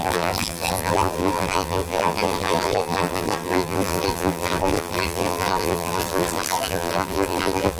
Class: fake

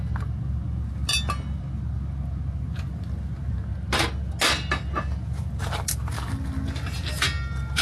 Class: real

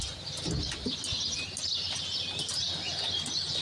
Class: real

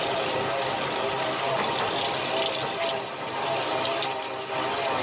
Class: real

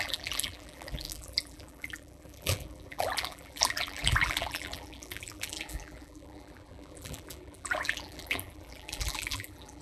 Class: fake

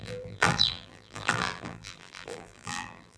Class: fake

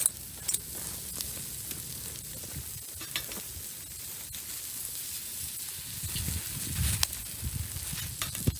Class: real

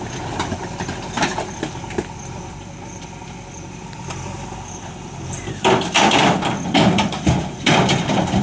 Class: fake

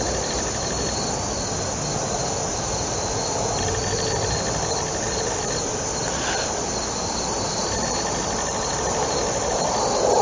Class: real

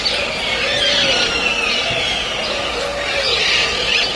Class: real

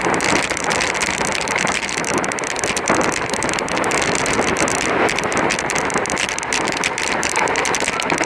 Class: fake